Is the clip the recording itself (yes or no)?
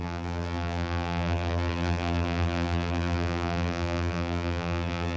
no